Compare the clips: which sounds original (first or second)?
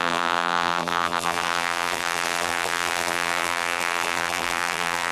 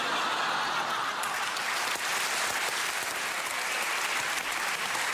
second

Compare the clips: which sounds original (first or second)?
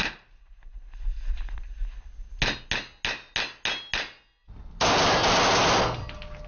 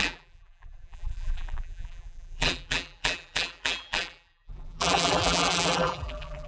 first